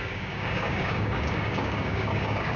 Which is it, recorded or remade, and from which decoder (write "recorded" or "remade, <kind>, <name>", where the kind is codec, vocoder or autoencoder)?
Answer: remade, codec, DAC